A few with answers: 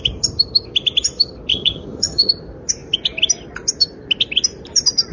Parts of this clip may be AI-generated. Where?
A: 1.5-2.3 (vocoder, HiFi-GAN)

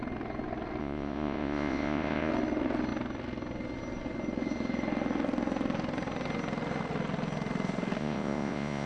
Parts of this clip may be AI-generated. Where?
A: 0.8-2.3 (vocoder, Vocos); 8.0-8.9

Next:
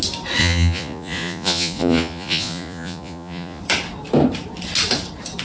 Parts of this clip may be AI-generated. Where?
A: 0.4-3.6 (vocoder, Vocos)

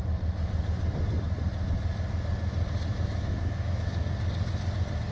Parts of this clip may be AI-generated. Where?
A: 2.9-4.0 (autoencoder, DAC-VAE)